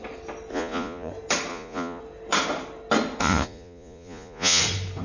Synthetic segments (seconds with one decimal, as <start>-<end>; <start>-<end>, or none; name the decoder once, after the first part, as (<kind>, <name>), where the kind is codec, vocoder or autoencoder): 0.5-1.1 (vocoder, Vocos); 1.5-2.0; 3.2-4.6